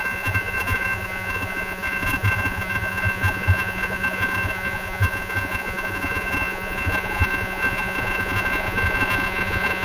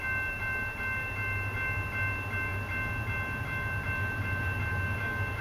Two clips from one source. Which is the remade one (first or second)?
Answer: first